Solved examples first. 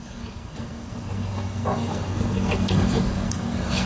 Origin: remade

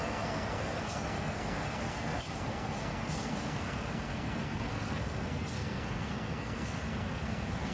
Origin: remade